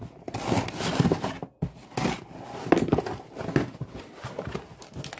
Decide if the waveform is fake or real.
real